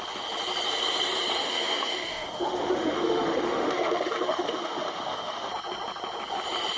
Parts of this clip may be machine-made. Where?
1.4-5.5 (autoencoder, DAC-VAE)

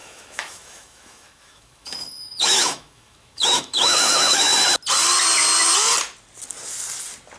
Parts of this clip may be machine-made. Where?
0.0-4.5 (autoencoder, DAC-VAE)

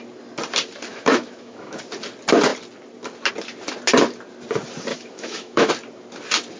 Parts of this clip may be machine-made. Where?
0.9-1.8 (autoencoder, DAC-VAE); 4.9-5.7

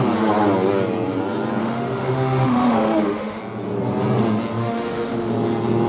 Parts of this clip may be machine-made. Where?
1.6-3.4 (autoencoder, DAC-VAE); 4.6-5.3

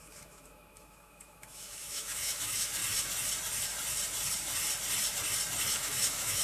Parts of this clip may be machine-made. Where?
0.0-2.8 (autoencoder, DAC-VAE); 5.7-6.4

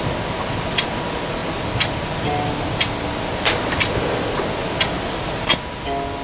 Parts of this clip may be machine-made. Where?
none

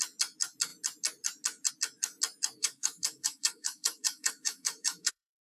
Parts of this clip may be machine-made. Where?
2.6-5.6 (autoencoder, DAC-VAE)